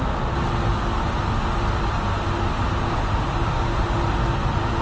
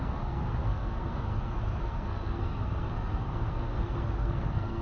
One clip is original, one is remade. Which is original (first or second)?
first